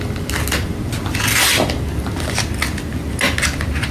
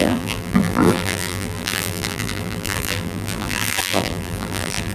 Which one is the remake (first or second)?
second